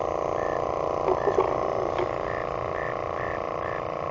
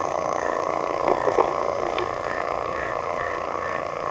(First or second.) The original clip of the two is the first